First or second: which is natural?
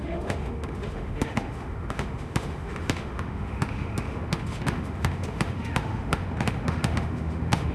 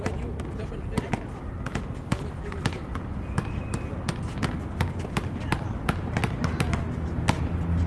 second